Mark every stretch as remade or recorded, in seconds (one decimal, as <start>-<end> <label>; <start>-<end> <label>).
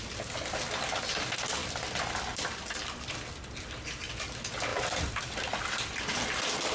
0.0-1.6 recorded; 1.6-4.1 remade; 4.1-4.7 recorded; 4.7-6.1 remade; 6.1-6.7 recorded